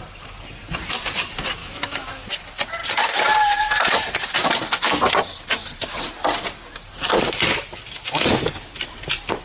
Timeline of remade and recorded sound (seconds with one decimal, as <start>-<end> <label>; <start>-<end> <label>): 0.0-1.6 recorded; 1.6-2.3 remade; 2.3-9.4 recorded